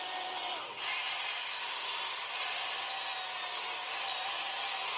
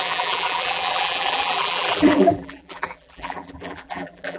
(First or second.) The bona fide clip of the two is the first